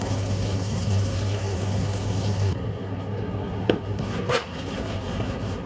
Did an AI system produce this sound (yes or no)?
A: yes